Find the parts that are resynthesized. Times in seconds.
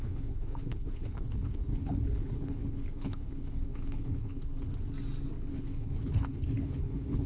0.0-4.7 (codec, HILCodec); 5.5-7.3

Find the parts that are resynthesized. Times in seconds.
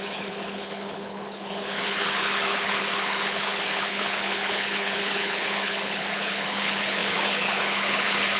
0.0-8.4 (codec, HILCodec)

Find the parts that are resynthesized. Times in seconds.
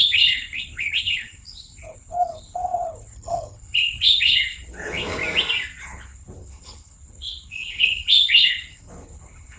0.0-5.2 (codec, HILCodec); 5.8-9.6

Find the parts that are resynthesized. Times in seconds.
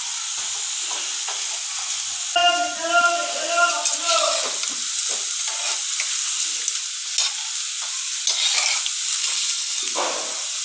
9.2-9.8 (codec, HILCodec)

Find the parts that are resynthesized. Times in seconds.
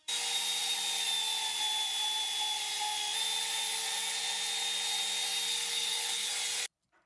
5.5-6.3 (codec, HILCodec)